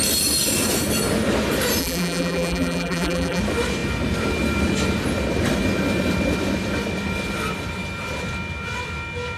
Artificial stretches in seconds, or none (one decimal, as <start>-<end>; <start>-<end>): 1.8-3.4